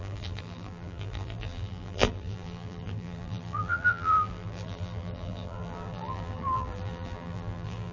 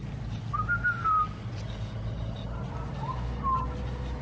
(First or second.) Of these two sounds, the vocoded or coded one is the first